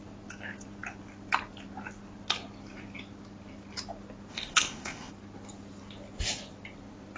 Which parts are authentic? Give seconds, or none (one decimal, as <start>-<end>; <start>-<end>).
0.0-4.3; 5.1-7.2